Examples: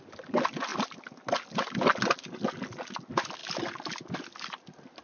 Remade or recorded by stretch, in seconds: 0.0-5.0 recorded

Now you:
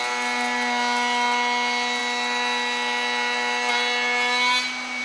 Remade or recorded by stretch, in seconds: 0.0-5.0 recorded